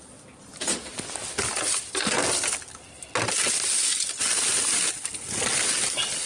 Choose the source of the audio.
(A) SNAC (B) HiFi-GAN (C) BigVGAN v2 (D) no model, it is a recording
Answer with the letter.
D